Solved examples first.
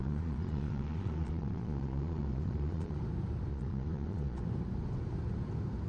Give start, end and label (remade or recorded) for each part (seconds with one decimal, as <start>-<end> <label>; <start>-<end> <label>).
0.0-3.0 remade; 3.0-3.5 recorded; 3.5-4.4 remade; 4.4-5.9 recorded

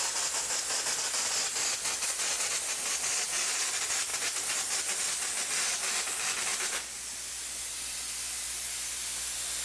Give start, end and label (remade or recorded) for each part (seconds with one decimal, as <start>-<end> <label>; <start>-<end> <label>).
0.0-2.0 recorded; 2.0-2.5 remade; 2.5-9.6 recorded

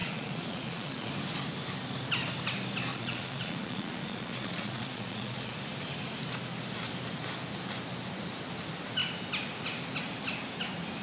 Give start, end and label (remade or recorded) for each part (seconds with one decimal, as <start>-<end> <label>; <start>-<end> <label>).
0.0-1.1 remade; 1.1-2.9 recorded; 2.9-5.5 remade; 5.5-11.0 recorded